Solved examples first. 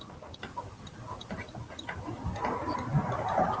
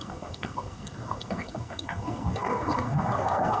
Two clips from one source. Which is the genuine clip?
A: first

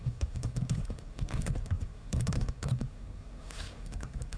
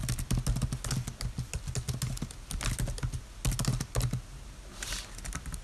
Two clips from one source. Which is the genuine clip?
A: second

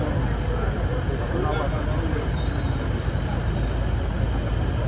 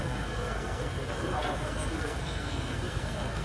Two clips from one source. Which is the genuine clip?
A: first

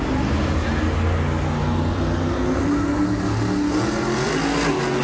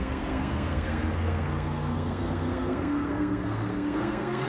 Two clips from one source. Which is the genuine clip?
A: first